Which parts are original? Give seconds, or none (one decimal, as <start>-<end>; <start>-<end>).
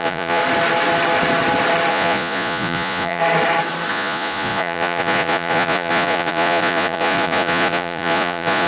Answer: 0.4-1.9; 3.2-3.9